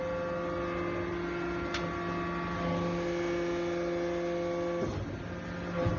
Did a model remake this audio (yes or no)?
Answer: no